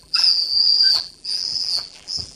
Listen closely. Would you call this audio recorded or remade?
remade